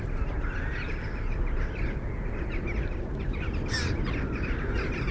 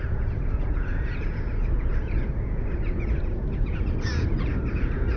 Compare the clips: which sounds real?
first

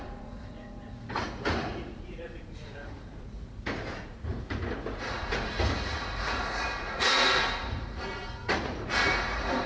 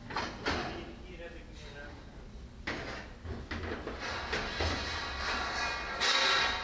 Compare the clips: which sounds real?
second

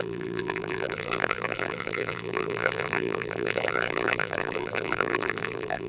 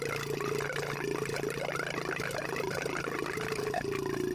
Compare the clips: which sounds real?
second